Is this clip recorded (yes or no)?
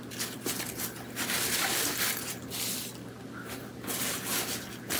yes